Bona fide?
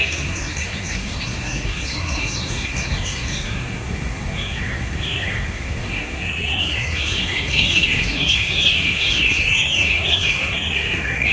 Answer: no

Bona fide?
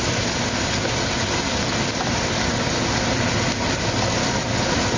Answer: yes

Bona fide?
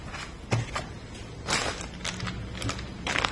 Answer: yes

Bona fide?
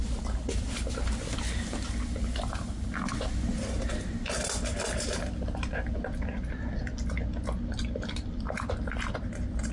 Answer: yes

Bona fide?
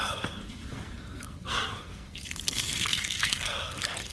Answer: no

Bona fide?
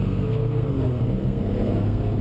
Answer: no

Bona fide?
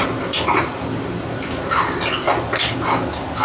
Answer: yes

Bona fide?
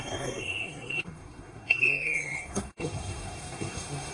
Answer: no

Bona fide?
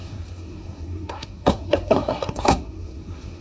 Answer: no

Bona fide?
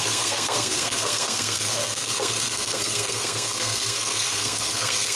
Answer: no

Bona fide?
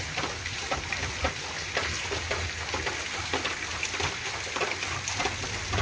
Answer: yes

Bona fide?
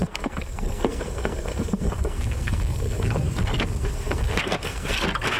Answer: no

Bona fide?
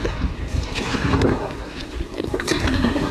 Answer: no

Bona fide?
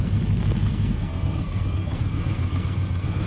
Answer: no